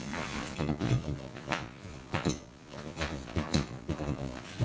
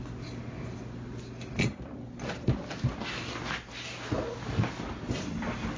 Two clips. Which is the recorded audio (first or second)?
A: second